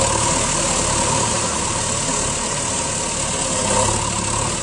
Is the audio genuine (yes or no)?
yes